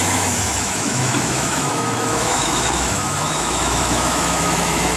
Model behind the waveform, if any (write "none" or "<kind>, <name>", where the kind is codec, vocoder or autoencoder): autoencoder, DAC-VAE